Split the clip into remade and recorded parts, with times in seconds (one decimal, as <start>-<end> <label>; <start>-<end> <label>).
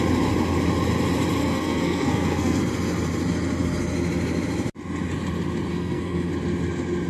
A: 0.0-1.4 recorded; 1.4-2.6 remade; 2.6-5.7 recorded; 5.7-6.3 remade; 6.3-7.1 recorded